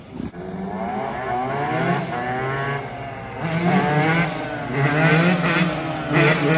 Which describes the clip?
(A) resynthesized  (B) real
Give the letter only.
B